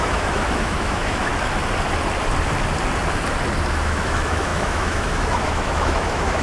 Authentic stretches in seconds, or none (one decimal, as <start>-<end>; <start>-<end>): 1.3-3.7